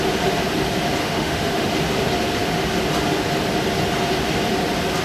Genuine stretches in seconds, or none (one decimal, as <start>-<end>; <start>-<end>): 0.0-1.0; 1.7-5.0

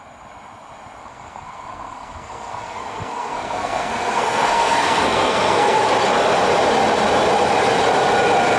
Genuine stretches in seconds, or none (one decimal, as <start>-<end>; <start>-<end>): 0.0-1.0; 5.9-8.6

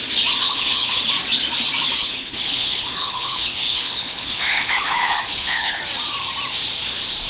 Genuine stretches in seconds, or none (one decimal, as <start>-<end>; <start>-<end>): 0.0-0.4; 1.0-2.0; 5.8-7.3

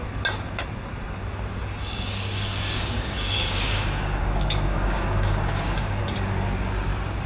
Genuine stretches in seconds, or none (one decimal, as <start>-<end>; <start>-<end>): 0.0-1.6; 6.0-7.3